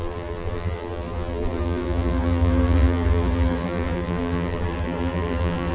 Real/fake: fake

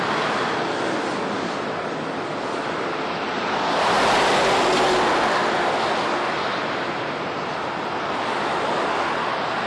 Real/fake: real